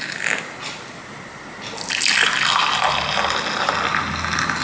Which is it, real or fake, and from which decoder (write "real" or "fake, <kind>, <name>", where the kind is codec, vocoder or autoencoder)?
real